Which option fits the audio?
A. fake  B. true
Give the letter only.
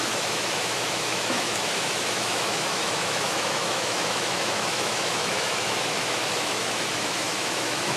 A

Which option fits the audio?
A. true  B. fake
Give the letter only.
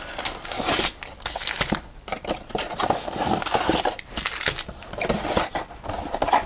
A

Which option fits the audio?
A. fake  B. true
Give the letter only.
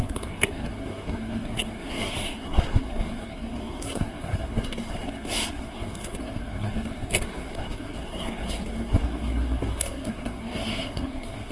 A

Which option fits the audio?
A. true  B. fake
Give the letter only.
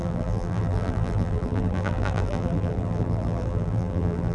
B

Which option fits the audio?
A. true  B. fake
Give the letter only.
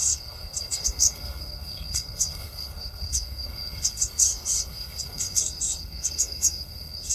B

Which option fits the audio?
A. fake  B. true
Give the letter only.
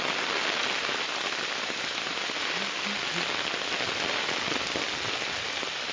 B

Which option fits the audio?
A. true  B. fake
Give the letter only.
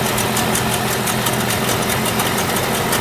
A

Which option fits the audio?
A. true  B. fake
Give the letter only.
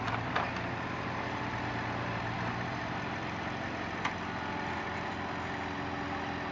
A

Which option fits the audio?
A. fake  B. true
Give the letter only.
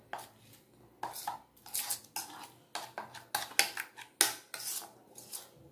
B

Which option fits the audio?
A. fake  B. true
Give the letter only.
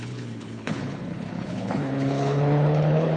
A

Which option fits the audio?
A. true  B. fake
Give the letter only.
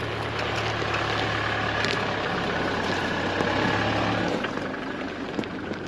A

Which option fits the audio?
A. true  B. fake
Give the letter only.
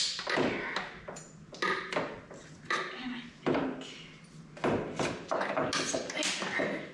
A